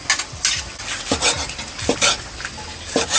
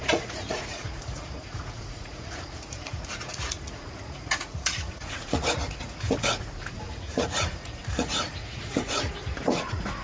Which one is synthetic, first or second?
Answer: second